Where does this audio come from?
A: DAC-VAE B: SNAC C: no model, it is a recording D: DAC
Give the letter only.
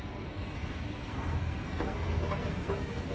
B